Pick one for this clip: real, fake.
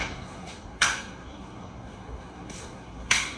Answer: fake